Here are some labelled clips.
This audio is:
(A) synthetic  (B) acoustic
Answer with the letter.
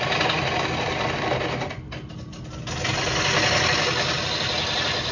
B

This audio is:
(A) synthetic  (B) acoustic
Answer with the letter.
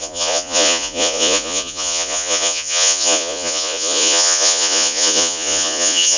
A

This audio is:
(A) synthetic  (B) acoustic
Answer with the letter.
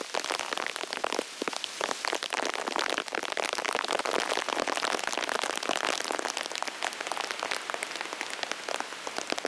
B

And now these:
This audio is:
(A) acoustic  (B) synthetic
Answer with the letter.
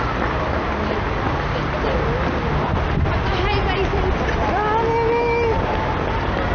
A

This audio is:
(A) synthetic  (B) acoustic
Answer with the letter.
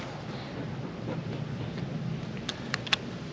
B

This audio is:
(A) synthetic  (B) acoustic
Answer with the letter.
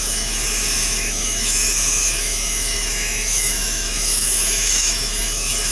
A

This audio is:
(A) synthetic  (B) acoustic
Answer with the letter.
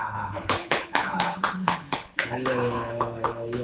A